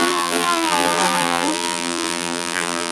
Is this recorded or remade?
remade